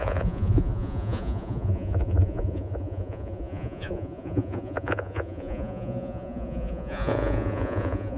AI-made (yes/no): yes